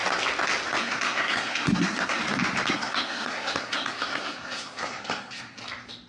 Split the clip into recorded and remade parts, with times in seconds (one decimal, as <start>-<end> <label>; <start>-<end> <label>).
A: 0.0-0.8 recorded; 0.8-2.2 remade; 2.2-2.7 recorded; 2.7-5.6 remade; 5.6-6.1 recorded